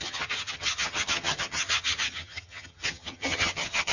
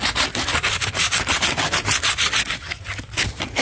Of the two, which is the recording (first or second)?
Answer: second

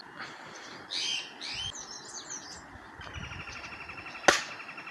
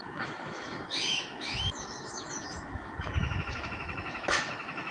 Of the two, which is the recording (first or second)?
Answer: first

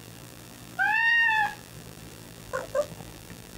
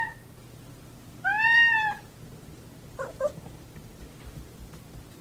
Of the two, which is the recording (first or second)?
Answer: second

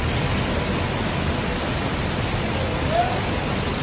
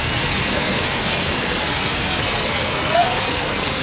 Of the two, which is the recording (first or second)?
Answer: first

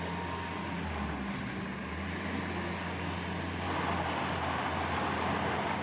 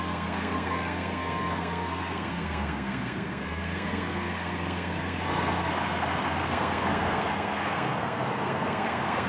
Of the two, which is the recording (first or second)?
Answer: first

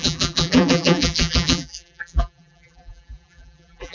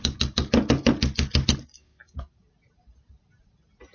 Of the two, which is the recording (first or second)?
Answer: second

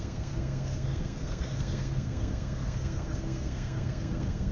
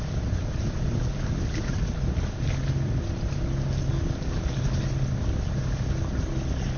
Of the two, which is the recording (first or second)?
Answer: second